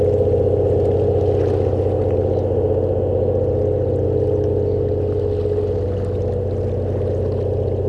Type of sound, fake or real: real